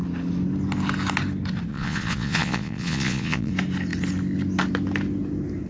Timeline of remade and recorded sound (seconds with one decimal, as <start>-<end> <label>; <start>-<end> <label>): 0.0-1.7 recorded; 1.7-3.5 remade; 3.5-5.7 recorded